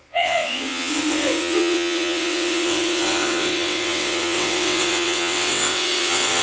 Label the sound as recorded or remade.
remade